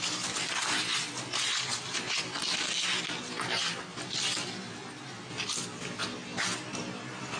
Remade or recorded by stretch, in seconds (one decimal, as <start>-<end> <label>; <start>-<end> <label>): 0.0-7.4 recorded